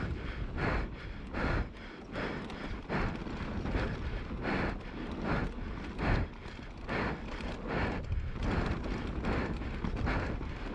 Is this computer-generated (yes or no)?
no